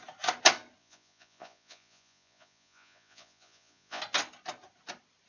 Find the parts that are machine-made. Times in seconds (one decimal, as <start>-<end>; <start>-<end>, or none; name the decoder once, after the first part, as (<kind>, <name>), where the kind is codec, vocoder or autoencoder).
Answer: 0.8-4.0 (vocoder, Vocos)